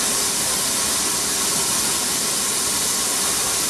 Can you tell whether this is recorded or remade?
recorded